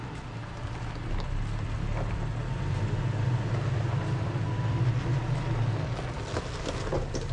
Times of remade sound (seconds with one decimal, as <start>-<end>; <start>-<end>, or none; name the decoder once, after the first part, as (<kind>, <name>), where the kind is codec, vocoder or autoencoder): none